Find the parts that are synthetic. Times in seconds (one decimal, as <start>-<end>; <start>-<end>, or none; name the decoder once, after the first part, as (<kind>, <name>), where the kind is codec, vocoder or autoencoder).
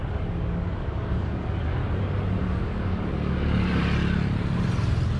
0.0-1.8 (codec, DAC); 2.4-3.8